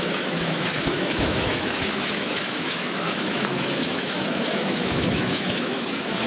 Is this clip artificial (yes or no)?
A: yes